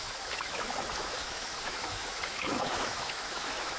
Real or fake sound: fake